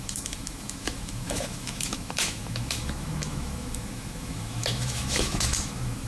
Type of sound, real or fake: fake